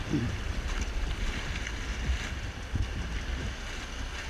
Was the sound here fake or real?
real